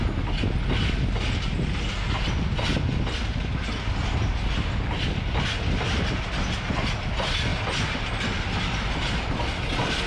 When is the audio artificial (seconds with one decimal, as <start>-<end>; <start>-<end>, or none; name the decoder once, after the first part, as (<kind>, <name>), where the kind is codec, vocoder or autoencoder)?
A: none